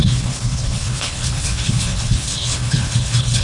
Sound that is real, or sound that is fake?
fake